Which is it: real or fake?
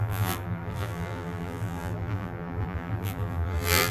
fake